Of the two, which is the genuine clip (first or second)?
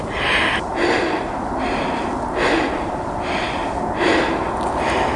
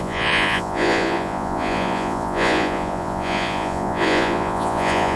first